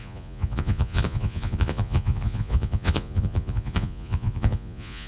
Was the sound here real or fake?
fake